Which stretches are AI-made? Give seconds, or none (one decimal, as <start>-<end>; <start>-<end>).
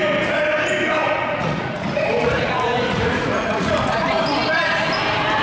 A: 1.0-4.2